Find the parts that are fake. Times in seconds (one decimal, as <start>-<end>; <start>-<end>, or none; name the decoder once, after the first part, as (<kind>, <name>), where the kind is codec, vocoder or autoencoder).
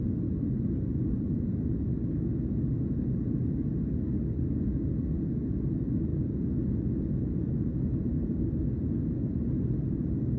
none